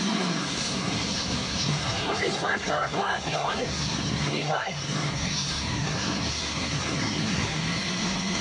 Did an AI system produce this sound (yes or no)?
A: yes